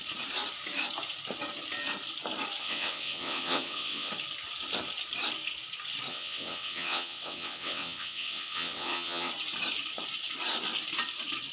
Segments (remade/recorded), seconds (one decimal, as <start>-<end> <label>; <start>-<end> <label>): 0.0-2.6 recorded; 2.6-4.1 remade; 4.1-6.1 recorded; 6.1-9.3 remade; 9.3-11.5 recorded